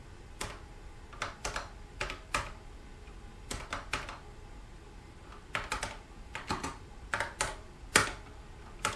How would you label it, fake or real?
real